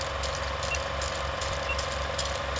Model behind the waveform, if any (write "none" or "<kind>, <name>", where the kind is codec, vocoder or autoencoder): none